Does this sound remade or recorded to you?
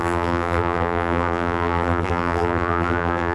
remade